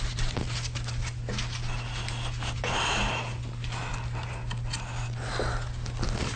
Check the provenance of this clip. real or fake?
real